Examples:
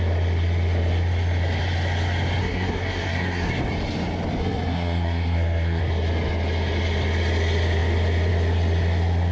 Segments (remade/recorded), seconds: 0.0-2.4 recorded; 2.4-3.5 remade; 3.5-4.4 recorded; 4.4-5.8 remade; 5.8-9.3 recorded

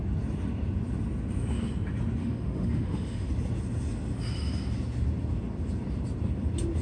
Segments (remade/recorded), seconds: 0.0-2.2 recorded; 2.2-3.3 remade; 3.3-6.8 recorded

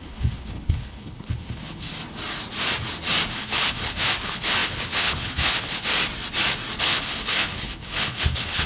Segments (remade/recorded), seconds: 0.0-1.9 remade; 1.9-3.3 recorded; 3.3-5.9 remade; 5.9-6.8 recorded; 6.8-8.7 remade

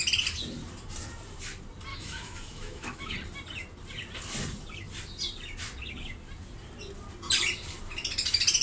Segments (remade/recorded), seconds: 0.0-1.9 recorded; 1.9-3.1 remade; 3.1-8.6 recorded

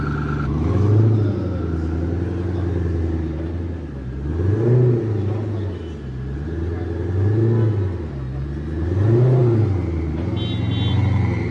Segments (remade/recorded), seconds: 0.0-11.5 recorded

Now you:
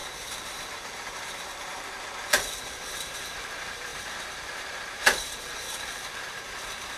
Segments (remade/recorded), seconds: 0.0-7.0 remade